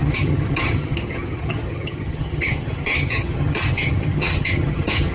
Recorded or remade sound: remade